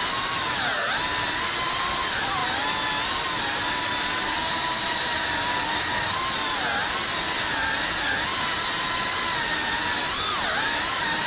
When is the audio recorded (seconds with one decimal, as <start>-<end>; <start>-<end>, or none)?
0.0-11.3